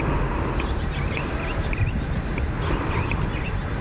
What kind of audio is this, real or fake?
real